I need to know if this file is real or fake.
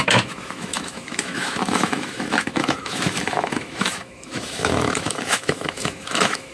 fake